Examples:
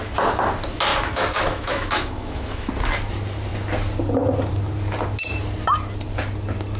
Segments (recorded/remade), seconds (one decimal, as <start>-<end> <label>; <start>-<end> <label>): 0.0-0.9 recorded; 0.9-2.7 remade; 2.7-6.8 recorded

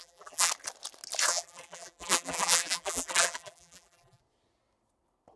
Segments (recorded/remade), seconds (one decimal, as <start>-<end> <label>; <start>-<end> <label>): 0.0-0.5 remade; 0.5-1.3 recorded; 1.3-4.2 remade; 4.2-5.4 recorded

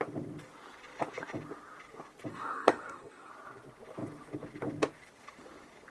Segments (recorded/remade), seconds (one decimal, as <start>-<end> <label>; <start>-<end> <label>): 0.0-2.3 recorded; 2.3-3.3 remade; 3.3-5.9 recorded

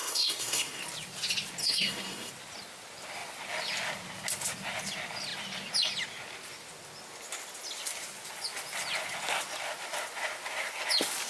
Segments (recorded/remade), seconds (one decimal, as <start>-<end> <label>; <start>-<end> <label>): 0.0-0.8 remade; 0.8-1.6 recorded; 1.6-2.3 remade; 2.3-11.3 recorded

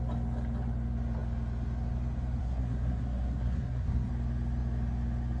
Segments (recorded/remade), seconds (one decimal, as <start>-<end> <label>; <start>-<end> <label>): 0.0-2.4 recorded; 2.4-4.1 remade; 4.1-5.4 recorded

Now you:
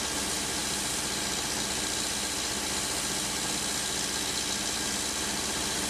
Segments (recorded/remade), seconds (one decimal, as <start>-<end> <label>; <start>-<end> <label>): 0.0-5.9 recorded

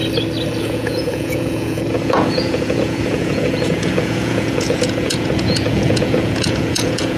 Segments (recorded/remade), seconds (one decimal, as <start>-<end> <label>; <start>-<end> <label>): 0.0-0.6 recorded; 0.6-7.2 remade

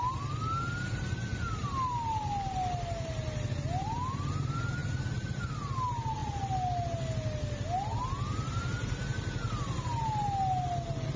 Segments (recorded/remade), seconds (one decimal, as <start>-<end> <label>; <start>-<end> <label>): 0.0-11.2 recorded